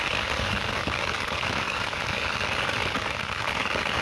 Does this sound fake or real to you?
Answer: fake